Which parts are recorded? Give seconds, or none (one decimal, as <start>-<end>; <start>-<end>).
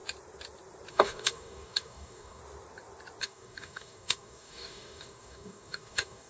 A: 0.0-0.9; 2.4-3.2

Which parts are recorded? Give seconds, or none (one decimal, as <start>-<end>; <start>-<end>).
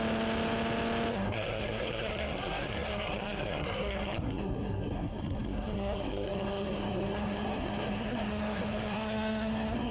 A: 0.0-1.1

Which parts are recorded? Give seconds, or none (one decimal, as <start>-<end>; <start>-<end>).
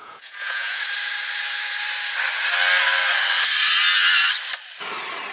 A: 0.8-5.3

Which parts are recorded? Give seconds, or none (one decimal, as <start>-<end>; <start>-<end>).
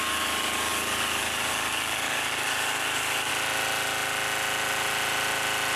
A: 3.3-5.8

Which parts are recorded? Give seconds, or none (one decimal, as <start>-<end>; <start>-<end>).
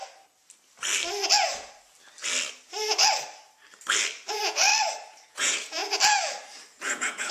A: 0.0-4.3; 4.7-5.3; 5.8-6.7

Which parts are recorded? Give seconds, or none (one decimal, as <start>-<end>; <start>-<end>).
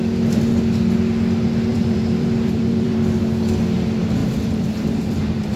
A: 0.0-1.7; 3.2-4.2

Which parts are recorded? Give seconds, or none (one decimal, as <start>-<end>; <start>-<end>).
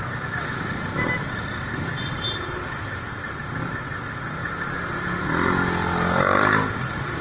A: 0.0-7.2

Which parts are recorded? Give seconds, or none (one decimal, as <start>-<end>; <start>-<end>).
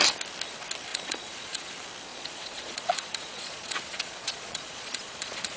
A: 0.0-0.9; 1.7-2.1